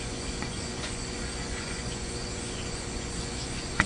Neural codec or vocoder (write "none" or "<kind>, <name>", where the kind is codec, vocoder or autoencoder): vocoder, Vocos